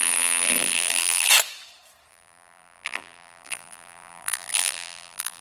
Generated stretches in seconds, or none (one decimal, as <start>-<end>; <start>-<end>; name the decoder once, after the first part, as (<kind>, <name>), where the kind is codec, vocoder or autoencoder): 0.0-1.3 (vocoder, BigVGAN v2); 2.1-5.4